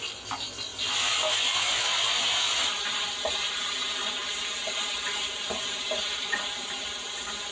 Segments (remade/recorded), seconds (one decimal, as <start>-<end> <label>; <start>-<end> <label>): 0.0-7.5 recorded